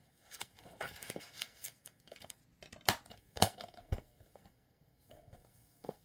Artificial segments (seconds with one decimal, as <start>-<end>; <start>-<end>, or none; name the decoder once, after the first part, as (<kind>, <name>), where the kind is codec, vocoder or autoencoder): 0.0-2.4 (codec, SNAC); 3.1-6.0

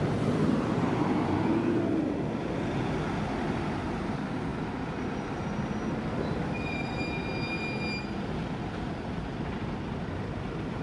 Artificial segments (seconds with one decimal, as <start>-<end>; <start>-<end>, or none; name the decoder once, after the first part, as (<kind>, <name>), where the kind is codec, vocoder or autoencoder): 0.0-4.5 (vocoder, BigVGAN v2); 8.3-10.8

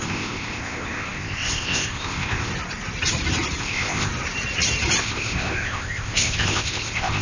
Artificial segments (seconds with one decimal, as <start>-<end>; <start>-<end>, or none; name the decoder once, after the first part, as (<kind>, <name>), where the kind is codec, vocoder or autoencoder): 0.0-2.5 (codec, ZipCodec); 3.6-4.1; 5.0-7.2

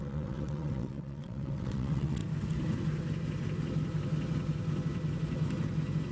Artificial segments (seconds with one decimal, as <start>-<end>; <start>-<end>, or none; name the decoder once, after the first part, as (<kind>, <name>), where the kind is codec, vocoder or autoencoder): 0.0-2.2 (vocoder, WaveNeXt)

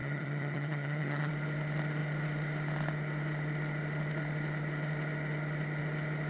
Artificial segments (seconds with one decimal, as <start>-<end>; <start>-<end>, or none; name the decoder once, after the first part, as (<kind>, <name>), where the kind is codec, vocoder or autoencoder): 0.0-1.3 (vocoder, HiFi-GAN)